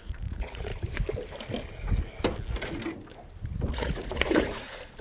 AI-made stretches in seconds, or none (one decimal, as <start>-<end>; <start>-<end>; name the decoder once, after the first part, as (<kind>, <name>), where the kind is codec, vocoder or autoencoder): 0.0-0.7 (vocoder, Vocos); 3.7-5.0